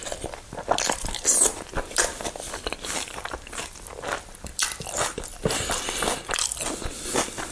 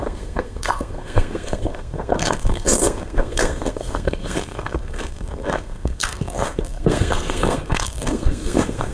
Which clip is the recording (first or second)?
first